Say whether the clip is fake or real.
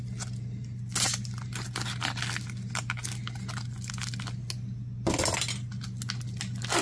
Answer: real